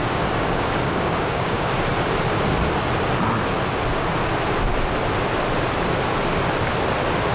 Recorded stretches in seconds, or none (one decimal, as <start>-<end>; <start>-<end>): 1.7-7.3